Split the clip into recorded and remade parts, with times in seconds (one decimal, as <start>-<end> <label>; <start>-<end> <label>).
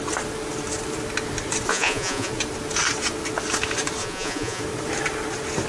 0.0-1.7 recorded; 1.7-2.3 remade; 2.3-4.0 recorded; 4.0-4.6 remade; 4.6-5.7 recorded